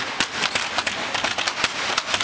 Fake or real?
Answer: real